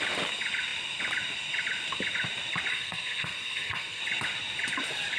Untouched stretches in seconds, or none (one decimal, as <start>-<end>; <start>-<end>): 0.0-2.7; 4.0-5.2